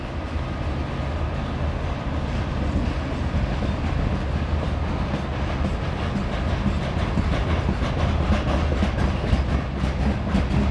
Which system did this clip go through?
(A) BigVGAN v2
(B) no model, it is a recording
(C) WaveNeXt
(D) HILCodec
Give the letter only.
B